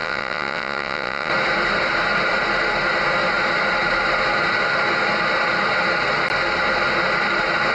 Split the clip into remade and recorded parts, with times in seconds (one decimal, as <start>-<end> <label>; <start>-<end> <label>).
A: 0.0-1.3 remade; 1.3-7.7 recorded